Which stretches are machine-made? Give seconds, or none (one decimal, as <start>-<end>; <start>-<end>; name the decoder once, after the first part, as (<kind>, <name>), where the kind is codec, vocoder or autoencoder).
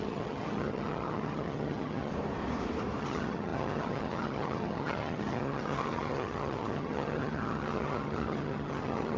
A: 0.0-2.1 (vocoder, HiFi-GAN); 3.0-9.2